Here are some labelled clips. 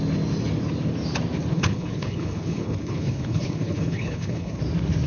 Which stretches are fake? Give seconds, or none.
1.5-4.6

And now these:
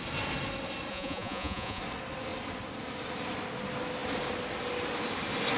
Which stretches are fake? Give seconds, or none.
0.9-1.8

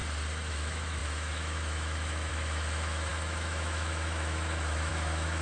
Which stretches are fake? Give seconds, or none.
0.5-5.4

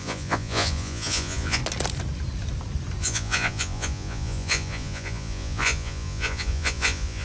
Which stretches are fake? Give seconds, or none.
0.0-1.6; 3.0-7.2

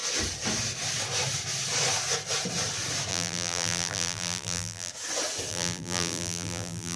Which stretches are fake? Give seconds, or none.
3.1-4.9; 5.5-7.0

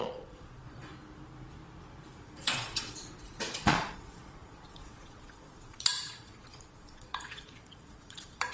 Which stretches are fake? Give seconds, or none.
0.0-0.9; 2.2-8.5

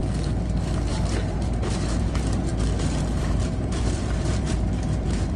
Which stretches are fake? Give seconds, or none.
0.9-2.5; 3.2-5.4

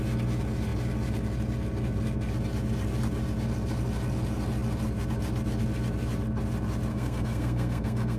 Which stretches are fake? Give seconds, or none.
6.9-8.2